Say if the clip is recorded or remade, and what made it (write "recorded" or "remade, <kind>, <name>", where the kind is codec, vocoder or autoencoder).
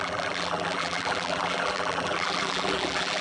remade, vocoder, BigVGAN v2